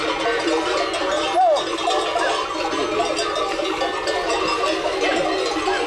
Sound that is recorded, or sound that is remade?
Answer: recorded